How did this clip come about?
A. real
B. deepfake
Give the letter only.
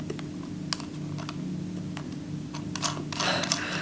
A